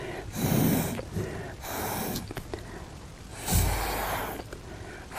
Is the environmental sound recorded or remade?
recorded